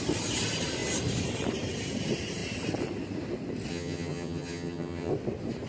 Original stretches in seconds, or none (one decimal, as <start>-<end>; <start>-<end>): 0.0-3.7; 5.1-5.7